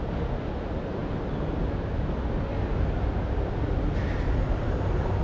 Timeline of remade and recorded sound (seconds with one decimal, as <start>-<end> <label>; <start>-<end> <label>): 0.0-5.2 recorded